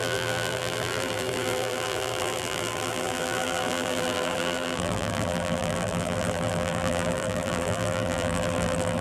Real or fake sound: fake